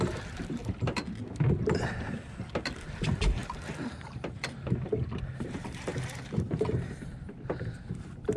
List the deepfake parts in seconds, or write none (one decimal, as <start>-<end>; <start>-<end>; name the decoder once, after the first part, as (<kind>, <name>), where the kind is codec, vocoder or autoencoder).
0.0-0.6 (vocoder, BigVGAN v2); 2.9-8.4